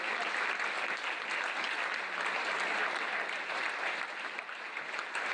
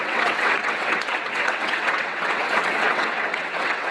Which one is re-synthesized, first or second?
second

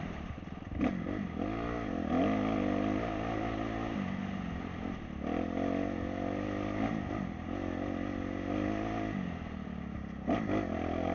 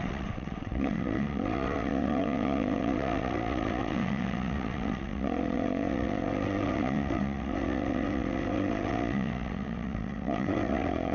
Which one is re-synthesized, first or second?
second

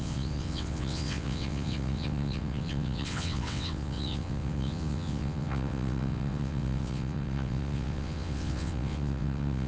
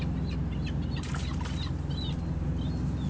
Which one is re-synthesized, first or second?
first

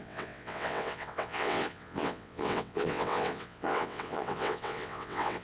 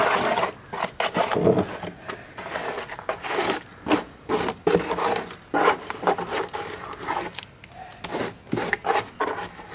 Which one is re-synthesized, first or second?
first